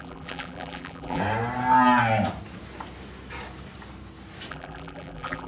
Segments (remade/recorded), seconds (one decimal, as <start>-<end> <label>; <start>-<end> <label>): 0.0-1.2 remade; 1.2-4.5 recorded; 4.5-5.5 remade